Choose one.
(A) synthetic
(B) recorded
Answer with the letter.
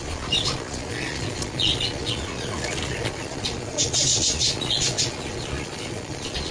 A